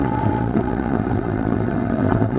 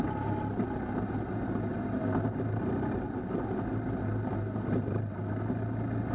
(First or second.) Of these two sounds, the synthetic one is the first